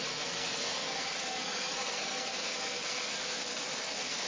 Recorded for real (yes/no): no